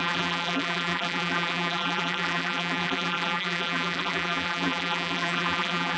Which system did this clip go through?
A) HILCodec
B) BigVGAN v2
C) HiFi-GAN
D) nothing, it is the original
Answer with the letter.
B